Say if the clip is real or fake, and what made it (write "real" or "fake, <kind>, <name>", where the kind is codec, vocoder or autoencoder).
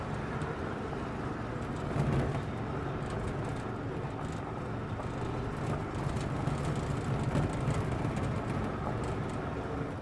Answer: real